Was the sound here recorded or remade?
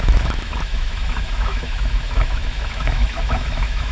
remade